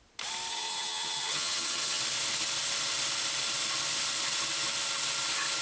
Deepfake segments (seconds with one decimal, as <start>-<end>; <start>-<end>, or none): 0.5-2.0